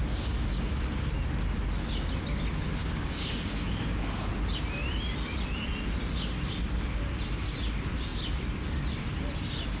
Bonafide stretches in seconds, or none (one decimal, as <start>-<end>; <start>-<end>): 0.7-2.8; 4.3-9.8